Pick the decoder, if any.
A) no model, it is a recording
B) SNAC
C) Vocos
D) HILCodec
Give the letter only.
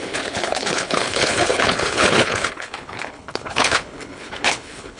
D